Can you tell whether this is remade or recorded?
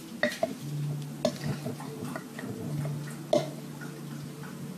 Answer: recorded